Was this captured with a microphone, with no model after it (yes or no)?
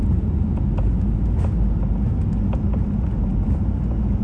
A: yes